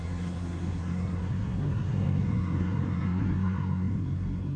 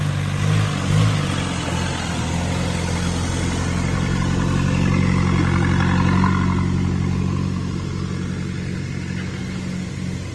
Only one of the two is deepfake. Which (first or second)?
first